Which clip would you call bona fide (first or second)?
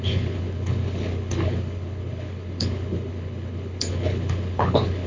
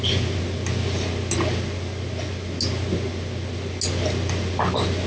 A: second